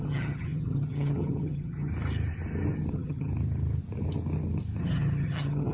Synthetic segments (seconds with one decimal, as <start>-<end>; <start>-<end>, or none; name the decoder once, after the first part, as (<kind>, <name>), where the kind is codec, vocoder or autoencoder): 0.0-1.9 (vocoder, HiFi-GAN); 2.9-3.3; 4.8-5.7

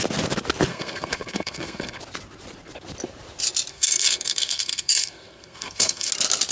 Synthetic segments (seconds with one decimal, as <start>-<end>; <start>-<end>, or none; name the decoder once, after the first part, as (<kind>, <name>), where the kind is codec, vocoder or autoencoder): 0.7-2.0 (codec, SNAC); 3.7-6.1

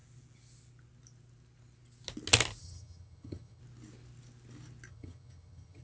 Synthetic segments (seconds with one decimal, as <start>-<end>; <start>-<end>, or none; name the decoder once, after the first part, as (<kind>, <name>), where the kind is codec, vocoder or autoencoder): 2.6-3.6 (vocoder, HiFi-GAN); 4.9-5.8

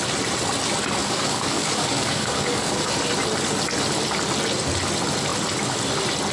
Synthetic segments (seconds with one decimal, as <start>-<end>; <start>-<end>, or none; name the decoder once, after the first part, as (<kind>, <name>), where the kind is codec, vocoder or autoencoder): 1.0-2.9 (codec, DAC)

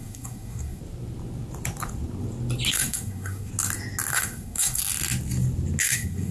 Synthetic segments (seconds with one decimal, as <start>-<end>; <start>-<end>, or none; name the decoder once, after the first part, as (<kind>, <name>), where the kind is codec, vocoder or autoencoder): 0.0-0.8 (codec, SNAC); 2.7-3.5; 4.1-4.8; 5.8-6.3

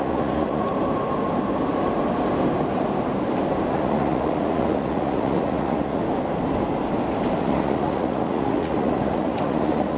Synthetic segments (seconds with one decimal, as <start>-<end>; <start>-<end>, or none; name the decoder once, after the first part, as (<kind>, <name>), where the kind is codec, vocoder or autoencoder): 0.0-0.7 (vocoder, Vocos); 3.7-6.0; 7.4-10.0

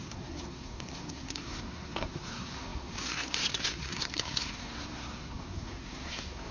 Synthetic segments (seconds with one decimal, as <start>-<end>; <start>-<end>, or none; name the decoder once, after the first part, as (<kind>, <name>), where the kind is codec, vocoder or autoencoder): 0.0-6.5 (codec, SNAC)

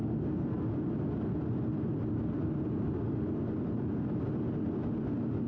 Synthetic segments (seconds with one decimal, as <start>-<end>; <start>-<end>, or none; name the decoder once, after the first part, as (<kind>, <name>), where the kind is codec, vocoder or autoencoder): none